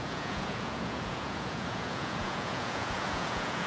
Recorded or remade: remade